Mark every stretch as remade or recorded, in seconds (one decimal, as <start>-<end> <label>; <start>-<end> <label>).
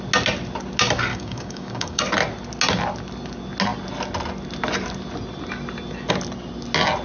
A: 0.0-1.1 recorded; 1.1-2.0 remade; 2.0-7.0 recorded